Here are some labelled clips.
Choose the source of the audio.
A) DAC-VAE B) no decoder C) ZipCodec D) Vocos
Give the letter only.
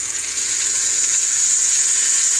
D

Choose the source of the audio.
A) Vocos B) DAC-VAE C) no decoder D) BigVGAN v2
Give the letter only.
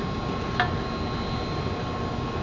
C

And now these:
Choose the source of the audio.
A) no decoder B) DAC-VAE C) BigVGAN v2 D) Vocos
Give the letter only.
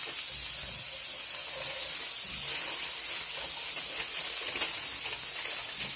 A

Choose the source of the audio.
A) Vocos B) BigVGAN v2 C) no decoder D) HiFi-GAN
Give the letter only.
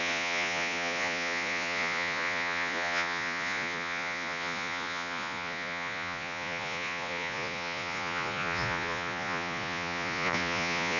A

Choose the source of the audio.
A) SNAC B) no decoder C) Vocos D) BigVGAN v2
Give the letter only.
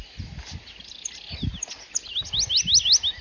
B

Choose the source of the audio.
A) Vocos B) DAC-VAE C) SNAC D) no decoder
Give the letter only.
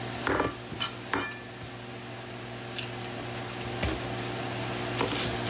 D